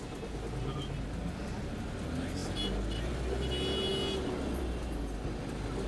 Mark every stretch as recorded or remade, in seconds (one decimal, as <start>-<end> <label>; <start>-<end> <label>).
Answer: 0.0-5.9 recorded